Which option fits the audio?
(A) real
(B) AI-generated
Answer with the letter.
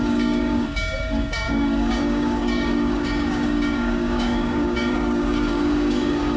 B